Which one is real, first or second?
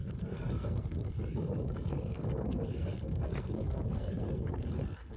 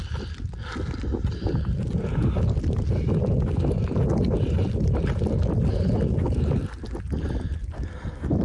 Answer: second